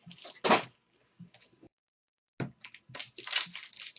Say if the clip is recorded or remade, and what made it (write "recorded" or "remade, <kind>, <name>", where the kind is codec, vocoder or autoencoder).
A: recorded